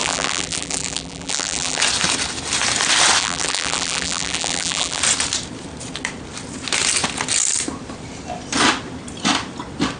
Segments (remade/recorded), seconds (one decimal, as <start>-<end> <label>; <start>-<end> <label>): 0.0-1.8 remade; 1.8-3.2 recorded; 3.2-5.0 remade; 5.0-10.0 recorded